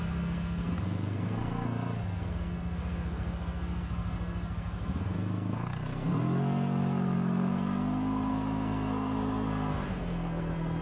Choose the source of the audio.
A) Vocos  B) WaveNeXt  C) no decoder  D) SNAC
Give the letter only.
D